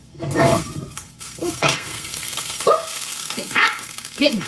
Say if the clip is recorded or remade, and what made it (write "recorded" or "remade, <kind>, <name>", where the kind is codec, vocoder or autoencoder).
remade, codec, SNAC